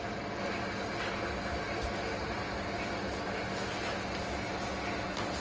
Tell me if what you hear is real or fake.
real